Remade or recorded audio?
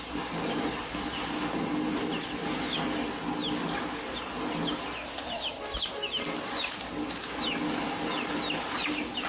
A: recorded